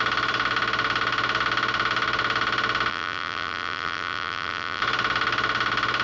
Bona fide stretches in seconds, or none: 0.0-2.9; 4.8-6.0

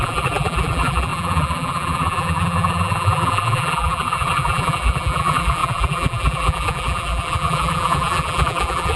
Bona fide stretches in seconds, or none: none

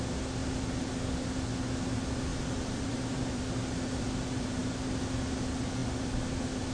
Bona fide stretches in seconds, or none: 0.0-2.3; 2.9-6.7

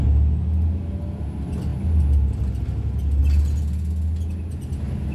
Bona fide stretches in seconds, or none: 0.0-5.1

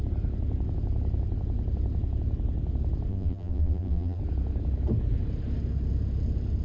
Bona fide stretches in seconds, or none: 0.0-3.1; 4.2-6.6

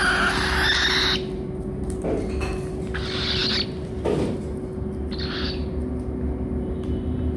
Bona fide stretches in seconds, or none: 0.0-7.4

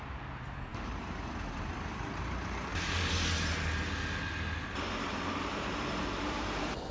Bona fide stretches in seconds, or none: 2.7-6.0

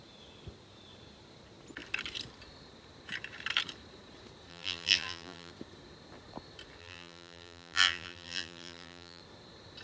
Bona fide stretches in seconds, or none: 0.0-4.5; 5.5-6.8; 9.2-9.8